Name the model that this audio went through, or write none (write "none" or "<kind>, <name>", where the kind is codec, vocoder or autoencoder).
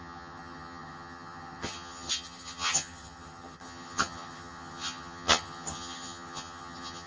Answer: vocoder, HiFi-GAN